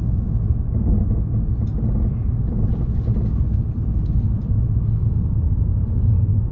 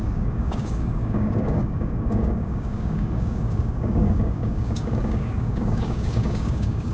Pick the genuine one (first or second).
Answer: first